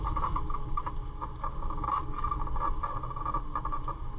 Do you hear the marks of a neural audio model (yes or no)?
no